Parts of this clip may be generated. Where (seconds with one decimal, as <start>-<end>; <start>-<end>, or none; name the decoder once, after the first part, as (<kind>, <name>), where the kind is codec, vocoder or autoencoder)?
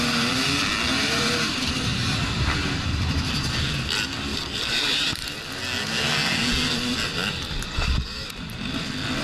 0.9-3.3 (vocoder, BigVGAN v2); 4.3-5.4; 7.8-8.7